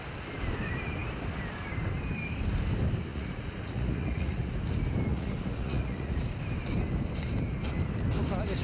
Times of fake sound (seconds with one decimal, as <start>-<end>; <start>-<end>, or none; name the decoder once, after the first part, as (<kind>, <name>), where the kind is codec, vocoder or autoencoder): 3.1-4.5 (vocoder, Vocos); 5.1-6.4